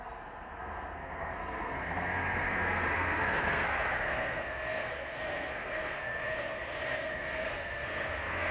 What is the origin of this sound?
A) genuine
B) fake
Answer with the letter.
B